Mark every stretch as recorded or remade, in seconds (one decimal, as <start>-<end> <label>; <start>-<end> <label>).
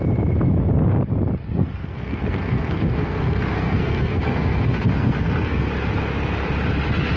0.0-1.4 recorded; 1.4-5.7 remade; 5.7-7.2 recorded